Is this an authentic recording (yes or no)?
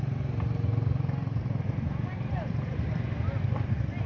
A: yes